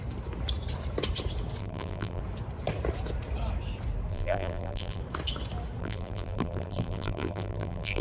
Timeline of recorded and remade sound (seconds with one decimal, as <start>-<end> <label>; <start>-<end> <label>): 0.0-1.6 recorded; 1.6-2.2 remade; 2.2-4.1 recorded; 4.1-5.0 remade; 5.0-5.8 recorded; 5.8-8.0 remade